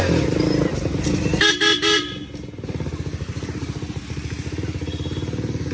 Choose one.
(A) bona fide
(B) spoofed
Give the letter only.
A